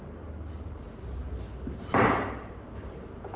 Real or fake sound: real